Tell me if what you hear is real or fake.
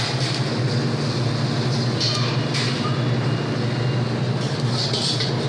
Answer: real